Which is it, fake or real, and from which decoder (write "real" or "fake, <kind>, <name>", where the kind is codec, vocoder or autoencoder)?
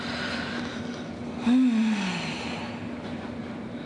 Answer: real